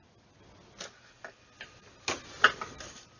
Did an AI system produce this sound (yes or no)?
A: no